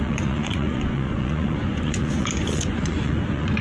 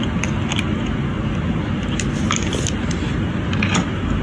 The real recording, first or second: second